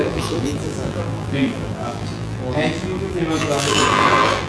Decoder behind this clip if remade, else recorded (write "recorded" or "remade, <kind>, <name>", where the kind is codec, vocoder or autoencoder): remade, vocoder, BigVGAN v2